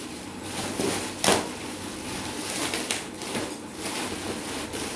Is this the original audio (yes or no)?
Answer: yes